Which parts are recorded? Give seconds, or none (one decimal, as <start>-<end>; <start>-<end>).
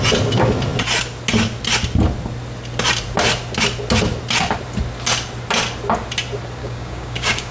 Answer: 0.0-6.6